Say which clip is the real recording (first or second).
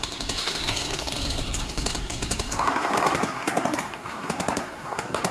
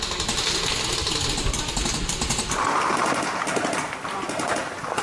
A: second